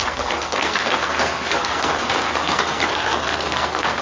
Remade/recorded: remade